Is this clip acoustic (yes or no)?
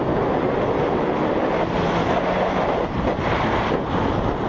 yes